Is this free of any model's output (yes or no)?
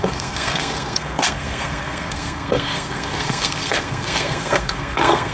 no